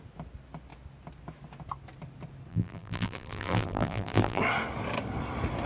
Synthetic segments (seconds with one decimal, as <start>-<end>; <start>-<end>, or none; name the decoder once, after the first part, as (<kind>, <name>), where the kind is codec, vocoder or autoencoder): 2.5-4.4 (vocoder, BigVGAN v2)